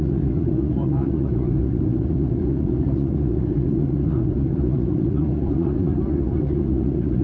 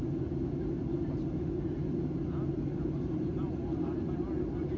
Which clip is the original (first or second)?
second